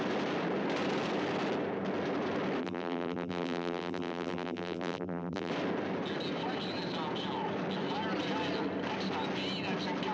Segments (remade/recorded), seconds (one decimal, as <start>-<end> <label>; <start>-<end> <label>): 0.0-2.6 recorded; 2.6-5.5 remade; 5.5-10.1 recorded